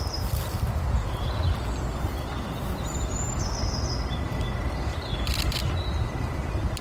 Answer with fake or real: real